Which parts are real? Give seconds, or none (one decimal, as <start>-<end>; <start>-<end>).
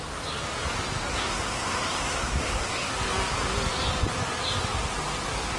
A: 0.0-1.1; 2.9-5.6